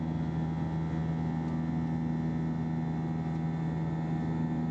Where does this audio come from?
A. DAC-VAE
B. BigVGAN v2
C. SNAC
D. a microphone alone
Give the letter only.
D